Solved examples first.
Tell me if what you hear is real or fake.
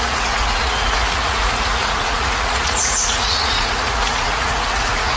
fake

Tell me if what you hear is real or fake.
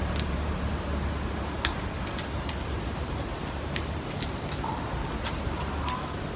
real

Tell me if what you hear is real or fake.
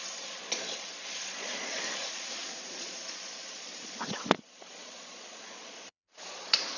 fake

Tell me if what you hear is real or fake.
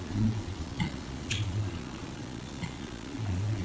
fake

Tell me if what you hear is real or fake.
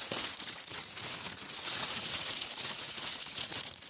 fake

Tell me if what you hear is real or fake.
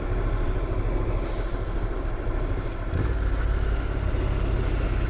real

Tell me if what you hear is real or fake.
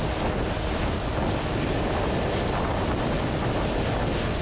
real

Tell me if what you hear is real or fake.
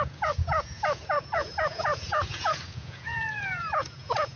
fake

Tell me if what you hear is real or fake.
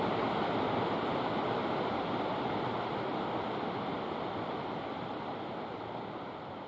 real